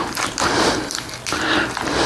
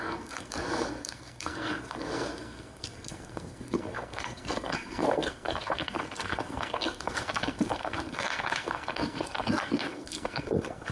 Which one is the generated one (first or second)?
second